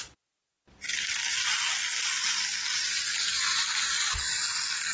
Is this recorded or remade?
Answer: recorded